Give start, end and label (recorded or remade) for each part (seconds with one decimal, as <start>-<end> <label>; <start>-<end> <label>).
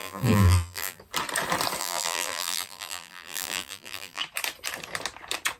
0.0-1.0 remade; 1.0-1.8 recorded; 1.8-4.2 remade; 4.2-5.6 recorded